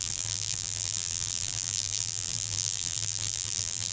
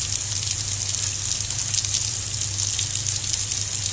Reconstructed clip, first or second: first